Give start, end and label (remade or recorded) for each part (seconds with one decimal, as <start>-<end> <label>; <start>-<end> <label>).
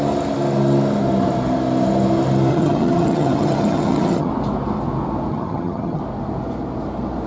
0.0-2.5 recorded; 2.5-4.3 remade; 4.3-5.3 recorded; 5.3-6.0 remade; 6.0-7.3 recorded